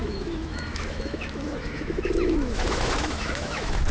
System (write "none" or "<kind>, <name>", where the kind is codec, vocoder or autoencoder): autoencoder, DAC-VAE